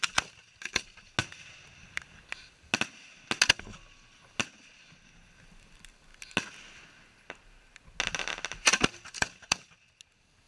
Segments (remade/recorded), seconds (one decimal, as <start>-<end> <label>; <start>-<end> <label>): 0.0-10.5 recorded